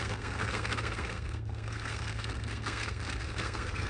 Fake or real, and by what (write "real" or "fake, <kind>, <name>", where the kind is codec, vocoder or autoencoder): fake, codec, SNAC